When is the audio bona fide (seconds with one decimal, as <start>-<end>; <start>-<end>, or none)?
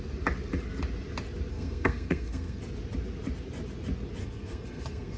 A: 0.0-1.5; 2.6-4.2